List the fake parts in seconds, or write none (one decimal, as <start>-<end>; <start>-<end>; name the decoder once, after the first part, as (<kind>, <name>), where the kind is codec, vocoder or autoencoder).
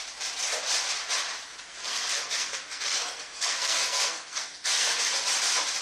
1.5-5.0 (codec, SNAC)